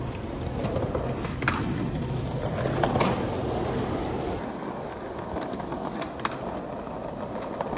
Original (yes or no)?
yes